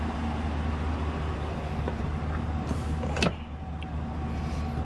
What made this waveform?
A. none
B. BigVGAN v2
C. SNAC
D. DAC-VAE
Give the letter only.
A